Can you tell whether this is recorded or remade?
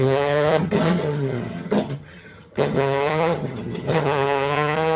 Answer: remade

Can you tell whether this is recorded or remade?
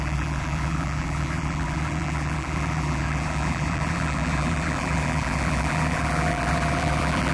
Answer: remade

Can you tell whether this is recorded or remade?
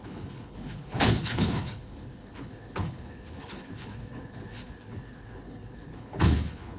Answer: remade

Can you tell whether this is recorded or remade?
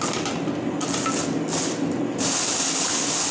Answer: recorded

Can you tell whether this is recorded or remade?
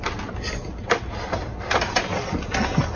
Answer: recorded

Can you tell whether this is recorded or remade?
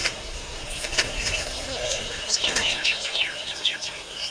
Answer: remade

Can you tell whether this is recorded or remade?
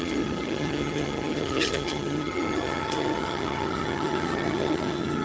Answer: remade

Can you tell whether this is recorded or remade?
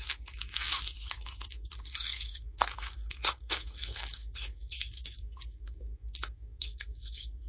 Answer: remade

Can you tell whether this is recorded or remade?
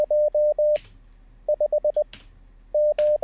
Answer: recorded